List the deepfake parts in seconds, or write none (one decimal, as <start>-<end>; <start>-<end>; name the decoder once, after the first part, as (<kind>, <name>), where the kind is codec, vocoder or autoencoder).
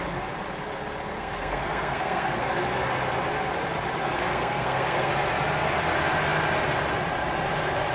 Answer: 1.2-2.5 (codec, SNAC); 4.1-5.1